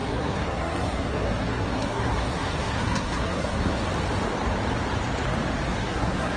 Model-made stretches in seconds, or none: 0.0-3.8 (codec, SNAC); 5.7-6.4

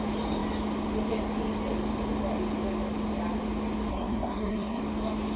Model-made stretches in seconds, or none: 3.9-4.8 (codec, SNAC)

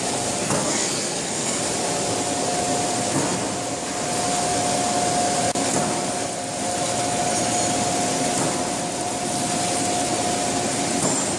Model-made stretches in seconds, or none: 0.4-1.6 (codec, SNAC)